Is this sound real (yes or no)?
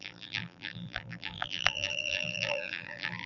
no